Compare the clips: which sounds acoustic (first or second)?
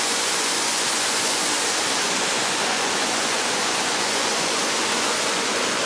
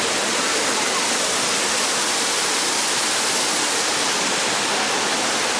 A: second